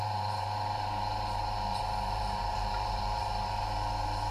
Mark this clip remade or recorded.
remade